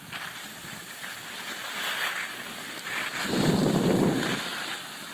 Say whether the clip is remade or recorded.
remade